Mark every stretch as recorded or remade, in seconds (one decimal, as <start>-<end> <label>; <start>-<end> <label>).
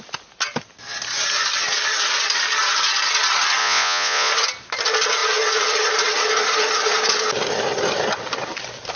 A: 0.0-3.6 recorded; 3.6-4.3 remade; 4.3-9.0 recorded